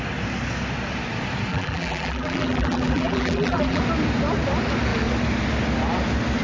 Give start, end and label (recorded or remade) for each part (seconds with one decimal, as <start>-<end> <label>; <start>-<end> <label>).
0.0-1.5 recorded; 1.5-3.8 remade; 3.8-6.4 recorded